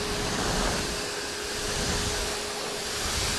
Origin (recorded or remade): recorded